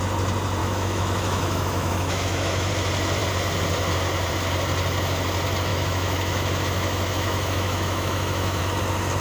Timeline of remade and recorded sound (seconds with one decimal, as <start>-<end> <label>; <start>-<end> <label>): 0.0-0.6 recorded; 0.6-2.7 remade; 2.7-5.7 recorded; 5.7-8.6 remade; 8.6-9.2 recorded